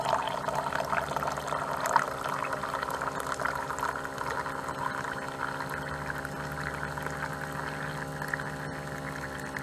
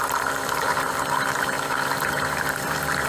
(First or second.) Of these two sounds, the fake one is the second